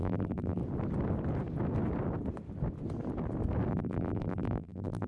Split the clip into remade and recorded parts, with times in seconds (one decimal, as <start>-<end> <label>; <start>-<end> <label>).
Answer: 0.0-0.6 remade; 0.6-3.7 recorded; 3.7-5.1 remade